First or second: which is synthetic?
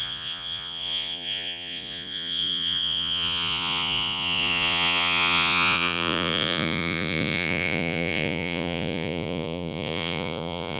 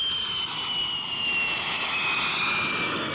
first